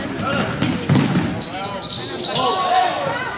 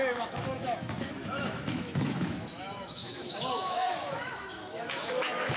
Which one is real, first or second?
first